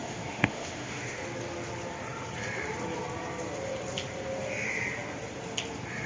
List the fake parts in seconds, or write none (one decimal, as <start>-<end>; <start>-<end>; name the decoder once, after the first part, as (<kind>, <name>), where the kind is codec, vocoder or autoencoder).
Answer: 0.0-1.2 (autoencoder, DAC-VAE)